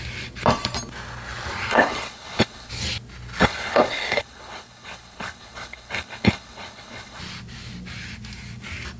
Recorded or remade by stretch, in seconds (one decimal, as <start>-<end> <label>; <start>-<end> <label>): 0.0-1.7 recorded; 1.7-2.7 remade; 2.7-3.4 recorded; 3.4-7.2 remade; 7.2-9.0 recorded